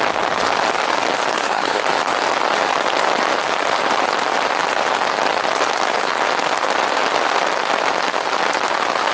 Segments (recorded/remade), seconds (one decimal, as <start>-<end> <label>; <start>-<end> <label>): 0.0-1.3 recorded; 1.3-1.8 remade; 1.8-9.1 recorded

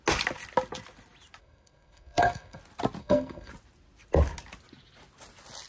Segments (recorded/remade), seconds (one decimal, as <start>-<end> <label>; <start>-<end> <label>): 0.0-1.4 recorded; 1.4-2.6 remade; 2.6-3.0 recorded; 3.0-3.5 remade; 3.5-5.7 recorded